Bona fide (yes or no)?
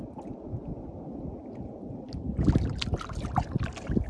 yes